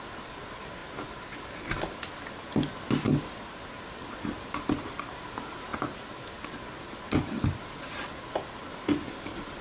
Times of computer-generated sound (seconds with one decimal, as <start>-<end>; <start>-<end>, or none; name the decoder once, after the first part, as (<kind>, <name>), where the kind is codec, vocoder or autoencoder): none